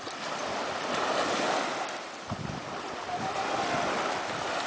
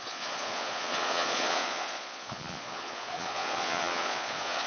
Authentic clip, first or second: first